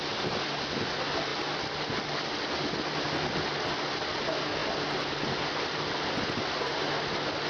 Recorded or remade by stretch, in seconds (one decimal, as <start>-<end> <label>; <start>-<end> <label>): 0.0-7.5 recorded